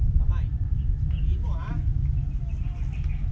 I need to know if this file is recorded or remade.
recorded